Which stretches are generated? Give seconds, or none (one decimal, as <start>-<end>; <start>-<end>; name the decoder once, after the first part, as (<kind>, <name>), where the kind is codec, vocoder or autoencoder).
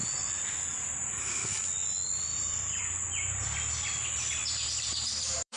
2.3-2.8 (vocoder, BigVGAN v2); 4.4-5.6